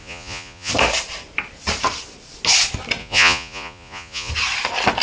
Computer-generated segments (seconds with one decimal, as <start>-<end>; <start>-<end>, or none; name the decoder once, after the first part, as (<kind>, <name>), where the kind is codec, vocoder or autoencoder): 0.0-0.7 (vocoder, Vocos); 3.0-4.3